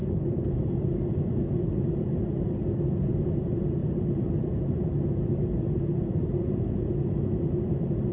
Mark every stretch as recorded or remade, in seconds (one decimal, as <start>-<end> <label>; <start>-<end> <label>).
0.0-8.1 recorded